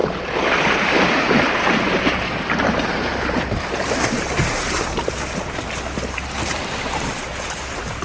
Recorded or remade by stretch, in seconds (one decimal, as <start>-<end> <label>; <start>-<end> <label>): 0.0-0.7 recorded; 0.7-8.0 remade